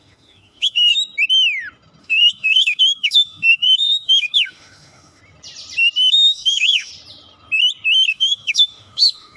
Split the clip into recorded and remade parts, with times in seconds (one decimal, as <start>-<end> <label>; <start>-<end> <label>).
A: 0.0-0.9 remade; 0.9-2.0 recorded; 2.0-5.2 remade; 5.2-6.1 recorded; 6.1-6.9 remade; 6.9-8.1 recorded; 8.1-9.4 remade